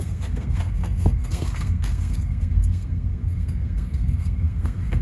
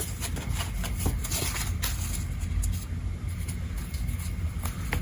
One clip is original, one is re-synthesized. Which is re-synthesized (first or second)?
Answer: first